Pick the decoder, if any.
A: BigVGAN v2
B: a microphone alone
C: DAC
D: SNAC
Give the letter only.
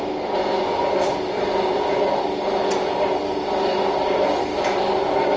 B